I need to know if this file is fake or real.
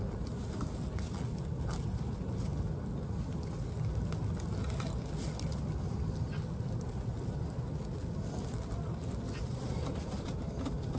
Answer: real